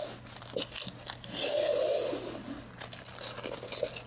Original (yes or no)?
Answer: yes